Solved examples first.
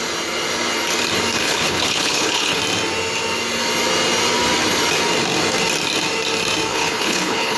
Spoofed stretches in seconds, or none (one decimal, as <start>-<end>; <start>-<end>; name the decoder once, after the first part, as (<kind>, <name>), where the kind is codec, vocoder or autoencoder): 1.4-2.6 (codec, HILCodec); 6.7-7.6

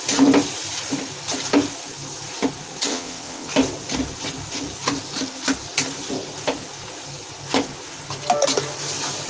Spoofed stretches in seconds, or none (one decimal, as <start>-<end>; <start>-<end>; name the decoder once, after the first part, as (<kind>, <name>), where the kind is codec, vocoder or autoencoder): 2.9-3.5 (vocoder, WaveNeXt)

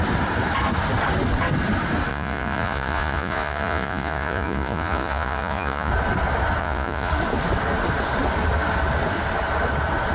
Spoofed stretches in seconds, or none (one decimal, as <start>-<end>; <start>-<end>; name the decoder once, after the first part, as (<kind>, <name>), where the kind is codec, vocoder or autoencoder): 2.1-5.9 (vocoder, Vocos); 6.6-7.1